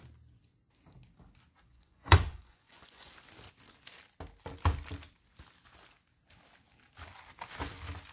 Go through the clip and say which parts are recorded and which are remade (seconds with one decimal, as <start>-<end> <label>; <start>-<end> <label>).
0.0-1.7 recorded; 1.7-3.1 remade; 3.1-8.1 recorded